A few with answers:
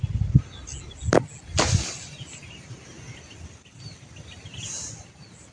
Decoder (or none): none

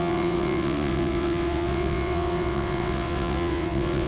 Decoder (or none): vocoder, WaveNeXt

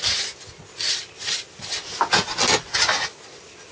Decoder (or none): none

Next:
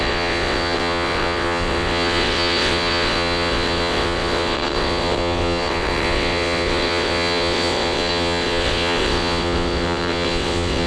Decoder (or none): vocoder, WaveNeXt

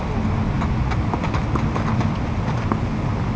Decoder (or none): none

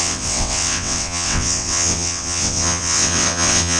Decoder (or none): vocoder, WaveNeXt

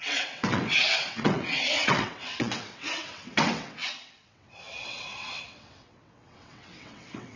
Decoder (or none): vocoder, WaveNeXt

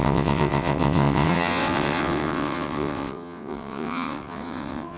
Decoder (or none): vocoder, WaveNeXt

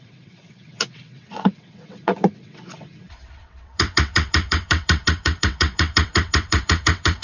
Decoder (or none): vocoder, WaveNeXt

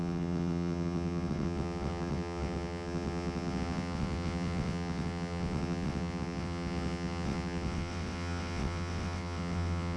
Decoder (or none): vocoder, WaveNeXt